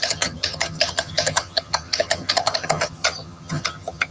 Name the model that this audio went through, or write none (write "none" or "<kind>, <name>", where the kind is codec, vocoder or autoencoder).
vocoder, HiFi-GAN